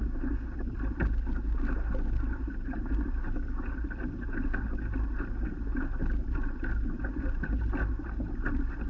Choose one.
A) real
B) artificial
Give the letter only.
A